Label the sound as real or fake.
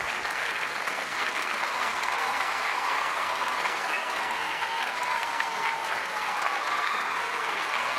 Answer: fake